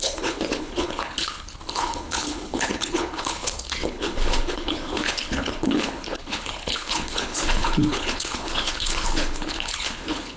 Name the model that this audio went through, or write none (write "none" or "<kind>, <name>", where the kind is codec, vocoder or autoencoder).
codec, HILCodec